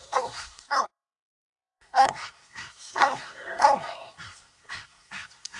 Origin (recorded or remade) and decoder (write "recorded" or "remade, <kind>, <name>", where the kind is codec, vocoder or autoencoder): remade, codec, SNAC